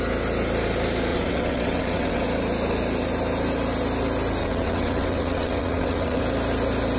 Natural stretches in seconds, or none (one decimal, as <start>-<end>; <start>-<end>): 0.0-1.1; 2.2-4.4; 6.2-7.0

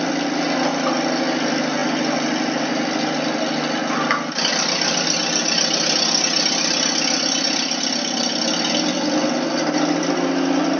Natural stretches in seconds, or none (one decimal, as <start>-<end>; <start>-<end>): 0.0-10.8

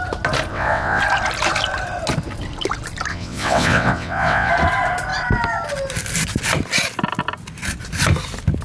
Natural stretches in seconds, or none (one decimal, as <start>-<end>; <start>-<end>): 0.0-0.5; 1.0-3.1; 4.5-8.6

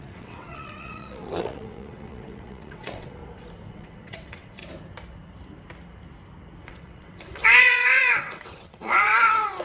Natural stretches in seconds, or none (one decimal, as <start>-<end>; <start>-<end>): 3.2-3.7; 4.6-6.6

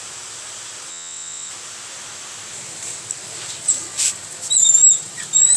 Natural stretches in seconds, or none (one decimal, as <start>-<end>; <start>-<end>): 0.0-0.9; 1.5-5.6

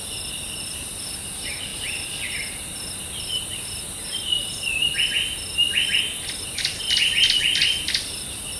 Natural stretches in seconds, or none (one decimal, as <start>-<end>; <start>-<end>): 0.0-8.6

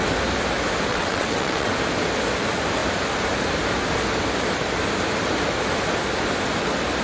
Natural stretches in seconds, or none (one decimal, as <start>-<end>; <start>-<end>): 0.0-0.9; 1.7-7.0